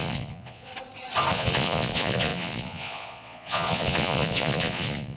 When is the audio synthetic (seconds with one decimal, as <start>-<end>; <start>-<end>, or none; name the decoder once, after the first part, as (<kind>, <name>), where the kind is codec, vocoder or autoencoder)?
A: 0.0-0.7 (vocoder, Vocos); 1.3-5.2